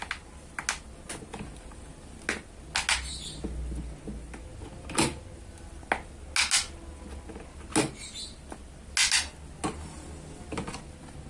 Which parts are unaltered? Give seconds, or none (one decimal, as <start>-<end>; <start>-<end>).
0.0-11.3